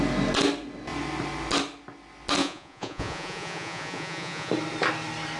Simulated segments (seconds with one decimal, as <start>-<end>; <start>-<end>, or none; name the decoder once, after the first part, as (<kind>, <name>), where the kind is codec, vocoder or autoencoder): 2.4-4.5 (vocoder, Vocos)